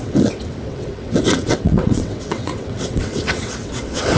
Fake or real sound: fake